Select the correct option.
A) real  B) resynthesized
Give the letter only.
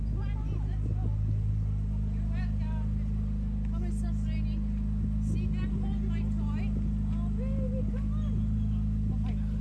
A